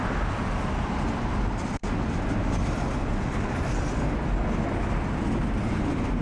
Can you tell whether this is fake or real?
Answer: real